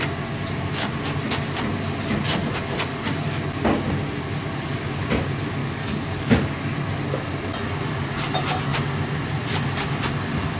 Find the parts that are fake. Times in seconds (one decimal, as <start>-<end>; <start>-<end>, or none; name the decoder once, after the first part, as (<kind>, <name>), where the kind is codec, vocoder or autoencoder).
5.6-6.5 (codec, DAC)